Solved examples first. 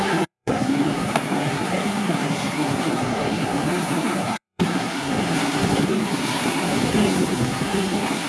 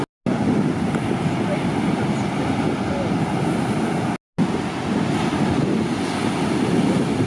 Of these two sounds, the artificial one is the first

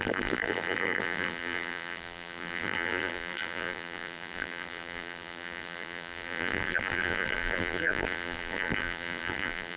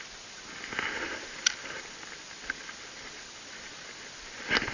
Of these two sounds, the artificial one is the first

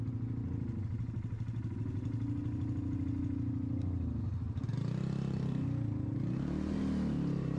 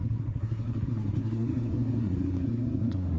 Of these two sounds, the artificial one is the second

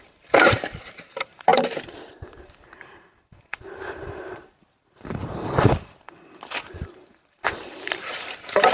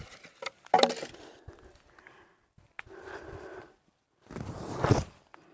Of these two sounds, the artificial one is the first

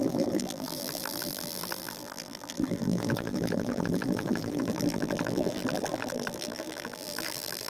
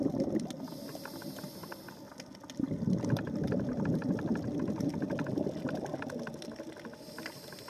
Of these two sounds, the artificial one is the first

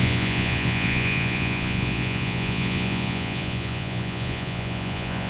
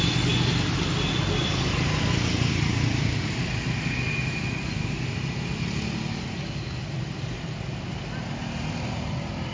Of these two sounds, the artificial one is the first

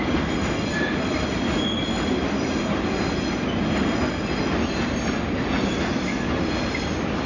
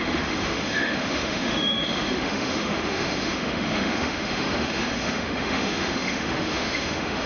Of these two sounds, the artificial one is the second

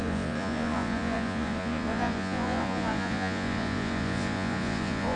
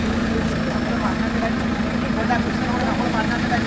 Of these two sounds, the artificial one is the first